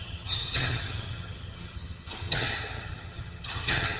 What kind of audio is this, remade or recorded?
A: remade